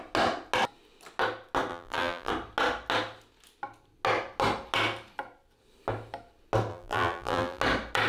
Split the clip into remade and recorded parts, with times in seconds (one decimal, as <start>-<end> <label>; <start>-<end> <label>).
0.0-1.7 recorded; 1.7-2.3 remade; 2.3-6.7 recorded; 6.7-7.6 remade; 7.6-8.1 recorded